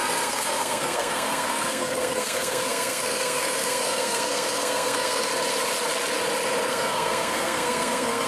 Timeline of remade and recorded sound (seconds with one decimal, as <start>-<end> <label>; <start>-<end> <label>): 0.0-5.3 remade; 5.3-6.7 recorded; 6.7-8.3 remade